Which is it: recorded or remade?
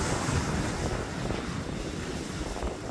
recorded